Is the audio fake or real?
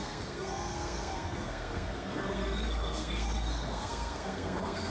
fake